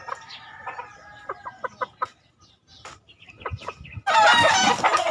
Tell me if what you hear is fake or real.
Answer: real